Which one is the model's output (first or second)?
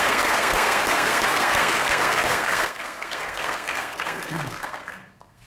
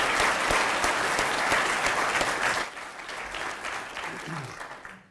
first